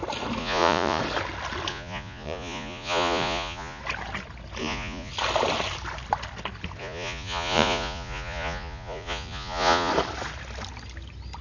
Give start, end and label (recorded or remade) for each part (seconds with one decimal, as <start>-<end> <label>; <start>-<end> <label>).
0.0-0.4 recorded; 0.4-1.0 remade; 1.0-1.7 recorded; 1.7-3.8 remade; 3.8-4.6 recorded; 4.6-5.1 remade; 5.1-6.8 recorded; 6.8-9.9 remade; 9.9-11.4 recorded